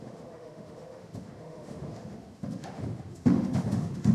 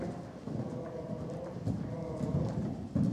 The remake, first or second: first